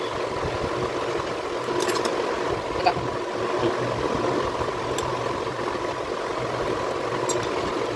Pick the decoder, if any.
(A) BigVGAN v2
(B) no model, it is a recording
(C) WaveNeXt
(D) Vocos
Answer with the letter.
B